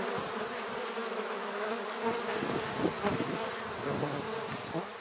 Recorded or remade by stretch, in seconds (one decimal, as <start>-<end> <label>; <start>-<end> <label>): 0.0-1.0 recorded; 1.0-1.8 remade; 1.8-5.0 recorded